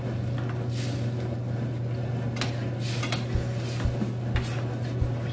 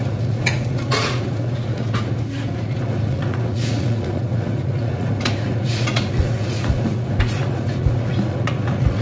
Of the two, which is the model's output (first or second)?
second